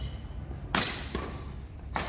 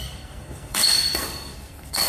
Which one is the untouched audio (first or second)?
first